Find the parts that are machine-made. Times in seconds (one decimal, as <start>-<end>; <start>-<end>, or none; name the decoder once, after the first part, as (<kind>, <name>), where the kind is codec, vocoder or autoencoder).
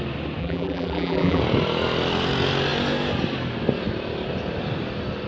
0.4-1.4 (vocoder, BigVGAN v2)